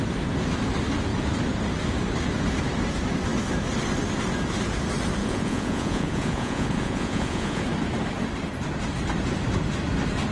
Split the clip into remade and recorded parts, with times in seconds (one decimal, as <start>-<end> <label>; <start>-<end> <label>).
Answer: 0.0-5.2 recorded; 5.2-7.6 remade; 7.6-10.3 recorded